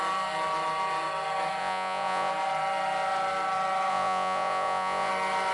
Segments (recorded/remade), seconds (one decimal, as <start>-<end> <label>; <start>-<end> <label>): 0.0-1.6 recorded; 1.6-2.3 remade; 2.3-3.9 recorded; 3.9-5.1 remade; 5.1-5.5 recorded

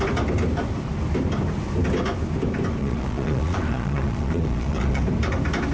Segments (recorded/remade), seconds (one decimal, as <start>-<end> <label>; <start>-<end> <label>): 0.0-2.8 recorded; 2.8-5.0 remade; 5.0-5.7 recorded